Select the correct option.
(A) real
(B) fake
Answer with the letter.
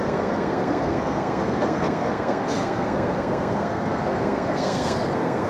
B